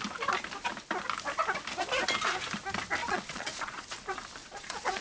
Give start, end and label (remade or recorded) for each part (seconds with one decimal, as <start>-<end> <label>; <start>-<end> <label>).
0.0-3.0 recorded; 3.0-3.8 remade; 3.8-4.4 recorded; 4.4-5.0 remade